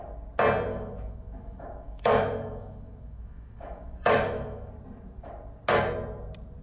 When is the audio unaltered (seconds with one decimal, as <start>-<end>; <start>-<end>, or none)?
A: 0.0-0.7; 4.7-6.6